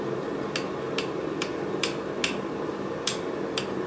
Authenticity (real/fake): real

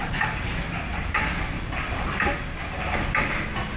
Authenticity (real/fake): real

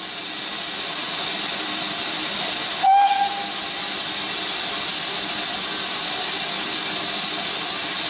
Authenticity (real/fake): real